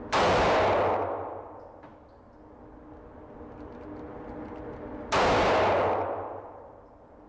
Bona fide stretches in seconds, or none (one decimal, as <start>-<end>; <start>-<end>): 0.0-7.3